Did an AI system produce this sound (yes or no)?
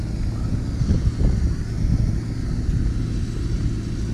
no